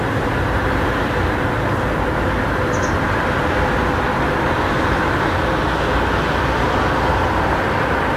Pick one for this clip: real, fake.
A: real